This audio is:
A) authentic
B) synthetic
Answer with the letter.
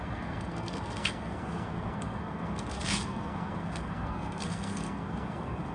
B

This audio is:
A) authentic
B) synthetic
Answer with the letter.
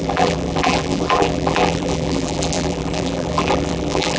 B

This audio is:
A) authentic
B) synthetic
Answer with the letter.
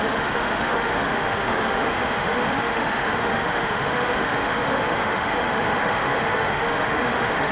B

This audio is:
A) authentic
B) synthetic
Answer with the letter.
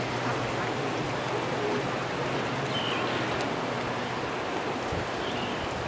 A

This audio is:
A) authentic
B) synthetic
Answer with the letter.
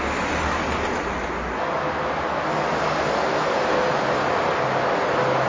A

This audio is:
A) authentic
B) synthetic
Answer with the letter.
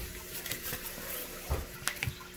A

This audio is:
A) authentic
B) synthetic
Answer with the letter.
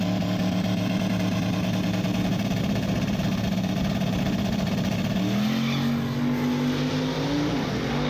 A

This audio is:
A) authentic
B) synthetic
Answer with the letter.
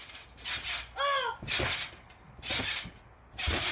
A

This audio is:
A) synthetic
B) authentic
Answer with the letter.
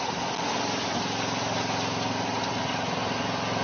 B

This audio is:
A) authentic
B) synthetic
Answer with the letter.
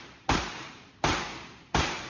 B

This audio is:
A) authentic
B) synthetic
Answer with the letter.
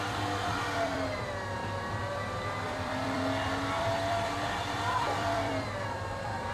B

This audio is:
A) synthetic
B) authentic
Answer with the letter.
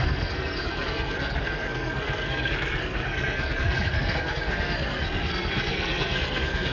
A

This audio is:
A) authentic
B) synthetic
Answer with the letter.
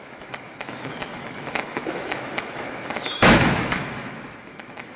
B